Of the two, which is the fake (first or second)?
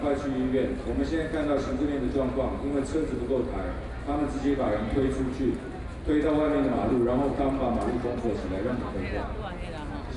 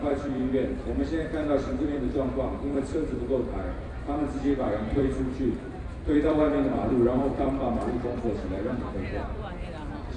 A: second